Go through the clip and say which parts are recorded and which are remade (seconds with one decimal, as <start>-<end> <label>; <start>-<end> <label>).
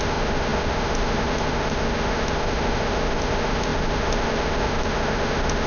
0.0-5.7 remade